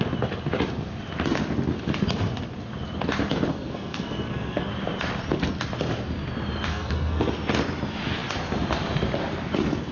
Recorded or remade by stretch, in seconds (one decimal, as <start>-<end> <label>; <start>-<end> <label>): 0.0-3.5 recorded; 3.5-4.7 remade; 4.7-6.7 recorded; 6.7-7.3 remade; 7.3-9.9 recorded